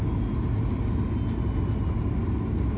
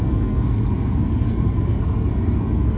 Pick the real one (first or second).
first